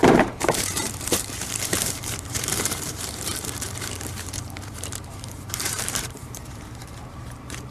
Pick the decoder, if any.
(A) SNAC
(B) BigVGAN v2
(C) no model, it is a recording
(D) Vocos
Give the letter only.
B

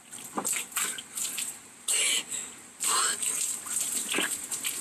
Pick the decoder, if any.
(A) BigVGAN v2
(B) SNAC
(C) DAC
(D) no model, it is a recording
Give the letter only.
D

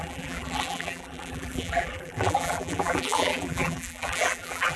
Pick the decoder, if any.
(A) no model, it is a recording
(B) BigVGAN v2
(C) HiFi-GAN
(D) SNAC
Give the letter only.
B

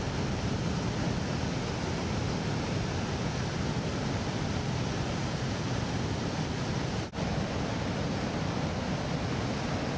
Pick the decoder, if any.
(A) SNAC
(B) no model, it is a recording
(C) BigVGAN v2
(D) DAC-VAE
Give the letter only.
B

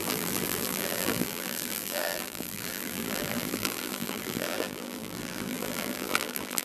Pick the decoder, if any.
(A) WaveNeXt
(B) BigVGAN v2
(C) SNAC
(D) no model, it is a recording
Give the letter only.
B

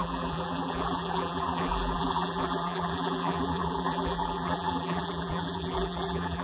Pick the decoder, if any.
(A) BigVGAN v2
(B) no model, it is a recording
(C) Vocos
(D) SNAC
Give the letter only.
A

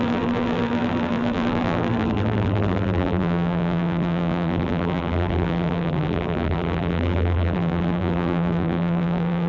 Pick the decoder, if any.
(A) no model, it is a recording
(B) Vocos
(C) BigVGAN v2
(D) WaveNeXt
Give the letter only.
C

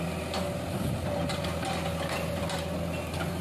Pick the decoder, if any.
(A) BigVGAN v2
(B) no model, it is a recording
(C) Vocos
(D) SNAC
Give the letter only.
B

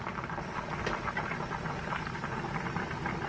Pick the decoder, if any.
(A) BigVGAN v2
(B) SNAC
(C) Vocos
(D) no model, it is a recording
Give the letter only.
A